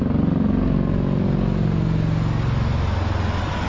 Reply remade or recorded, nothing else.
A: recorded